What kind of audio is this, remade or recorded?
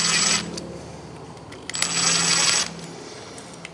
recorded